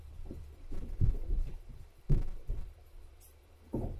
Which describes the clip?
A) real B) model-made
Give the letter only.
B